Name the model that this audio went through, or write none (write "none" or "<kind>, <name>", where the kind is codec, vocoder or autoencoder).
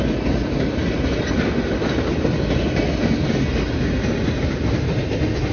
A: none